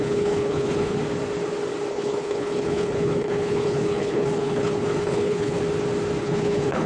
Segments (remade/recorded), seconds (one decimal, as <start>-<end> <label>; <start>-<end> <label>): 0.0-1.0 remade; 1.0-1.9 recorded; 1.9-5.6 remade; 5.6-6.2 recorded; 6.2-6.9 remade